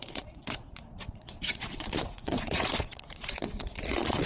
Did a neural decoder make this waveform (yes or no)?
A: yes